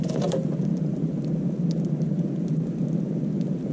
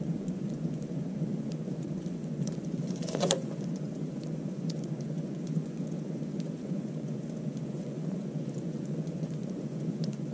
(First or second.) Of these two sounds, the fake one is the second